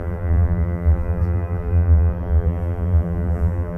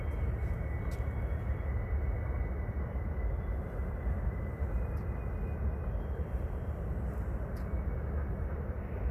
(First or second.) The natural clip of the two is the second